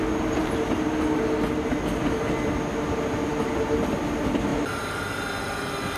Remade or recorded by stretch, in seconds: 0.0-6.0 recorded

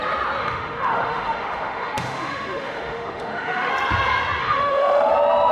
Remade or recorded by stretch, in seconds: 0.0-0.4 recorded; 0.4-3.7 remade; 3.7-4.4 recorded; 4.4-5.1 remade; 5.1-5.5 recorded